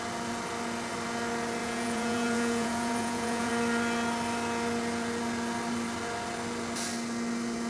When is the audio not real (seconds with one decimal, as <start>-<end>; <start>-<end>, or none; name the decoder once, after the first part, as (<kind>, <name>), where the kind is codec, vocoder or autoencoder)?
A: 1.6-3.5 (vocoder, Vocos)